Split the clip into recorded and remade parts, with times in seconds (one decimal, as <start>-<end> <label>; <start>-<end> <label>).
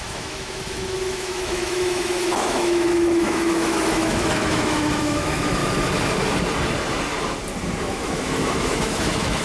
0.0-5.6 remade; 5.6-7.8 recorded; 7.8-9.4 remade